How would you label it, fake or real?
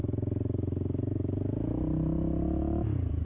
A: real